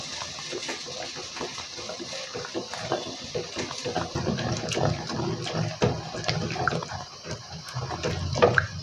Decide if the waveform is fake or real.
real